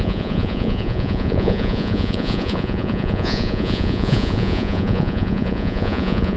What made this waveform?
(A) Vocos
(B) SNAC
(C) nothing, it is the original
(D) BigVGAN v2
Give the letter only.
A